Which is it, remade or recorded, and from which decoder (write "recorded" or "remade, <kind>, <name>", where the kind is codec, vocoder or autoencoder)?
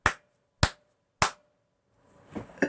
recorded